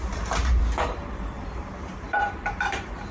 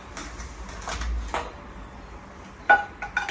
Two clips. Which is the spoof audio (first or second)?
first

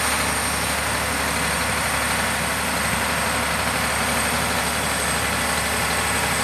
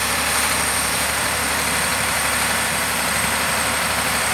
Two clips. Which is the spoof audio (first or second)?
second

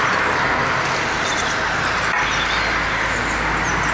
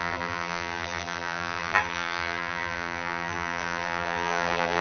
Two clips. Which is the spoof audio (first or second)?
second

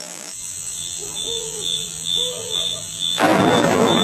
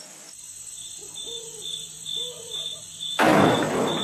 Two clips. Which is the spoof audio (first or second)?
first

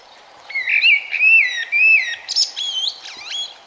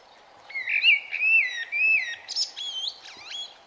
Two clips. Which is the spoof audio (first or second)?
first